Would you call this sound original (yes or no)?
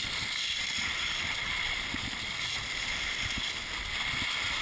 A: yes